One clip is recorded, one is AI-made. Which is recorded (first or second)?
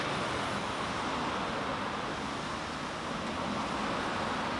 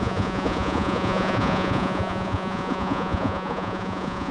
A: first